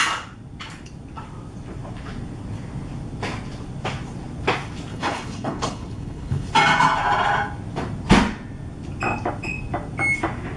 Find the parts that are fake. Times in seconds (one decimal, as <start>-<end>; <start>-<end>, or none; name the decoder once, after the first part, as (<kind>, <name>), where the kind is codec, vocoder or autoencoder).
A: 4.9-6.5 (codec, HILCodec)